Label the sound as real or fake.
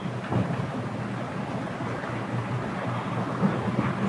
real